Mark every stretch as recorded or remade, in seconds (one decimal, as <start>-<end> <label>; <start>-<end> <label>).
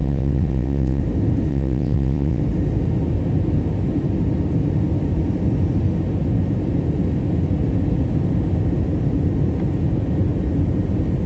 0.0-1.0 remade; 1.0-1.5 recorded; 1.5-2.4 remade; 2.4-11.3 recorded